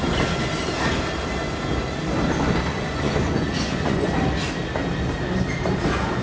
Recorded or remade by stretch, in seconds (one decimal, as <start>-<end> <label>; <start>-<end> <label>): 0.0-2.7 recorded; 2.7-4.1 remade; 4.1-6.2 recorded

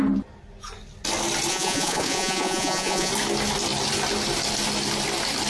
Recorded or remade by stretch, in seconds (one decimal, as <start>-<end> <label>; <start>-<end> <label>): 0.0-1.5 recorded; 1.5-3.1 remade; 3.1-5.5 recorded

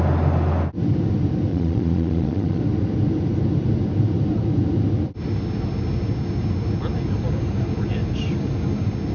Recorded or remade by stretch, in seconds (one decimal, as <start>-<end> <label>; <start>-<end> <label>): 0.0-1.5 recorded; 1.5-2.6 remade; 2.6-9.1 recorded

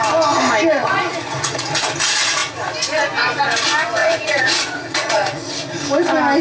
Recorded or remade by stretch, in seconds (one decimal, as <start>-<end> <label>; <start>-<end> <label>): 0.0-0.8 recorded; 0.8-1.7 remade; 1.7-4.0 recorded; 4.0-5.4 remade; 5.4-6.4 recorded

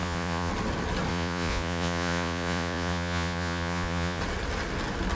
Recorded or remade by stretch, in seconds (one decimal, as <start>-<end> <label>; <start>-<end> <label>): 0.0-0.5 remade; 0.5-1.1 recorded; 1.1-4.2 remade; 4.2-5.1 recorded

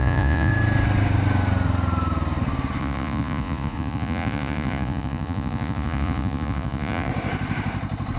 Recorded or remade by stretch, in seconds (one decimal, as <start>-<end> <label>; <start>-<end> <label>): 0.0-0.5 remade; 0.5-2.8 recorded; 2.8-7.1 remade; 7.1-8.2 recorded